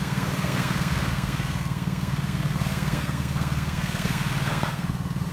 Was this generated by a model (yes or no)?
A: yes